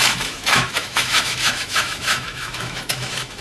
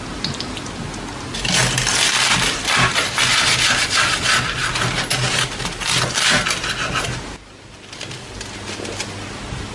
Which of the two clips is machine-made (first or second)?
first